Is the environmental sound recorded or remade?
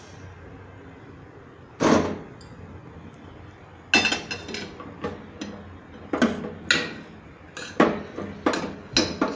recorded